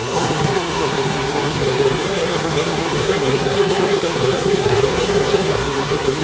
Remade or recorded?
remade